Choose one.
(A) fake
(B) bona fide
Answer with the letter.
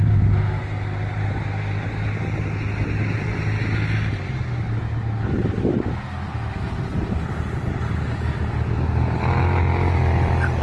B